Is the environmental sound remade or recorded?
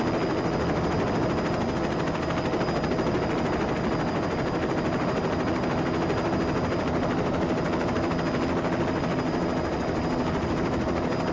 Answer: recorded